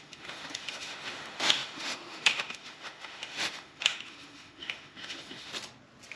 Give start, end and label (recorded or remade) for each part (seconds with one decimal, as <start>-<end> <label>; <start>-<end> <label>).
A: 0.0-5.5 remade; 5.5-6.2 recorded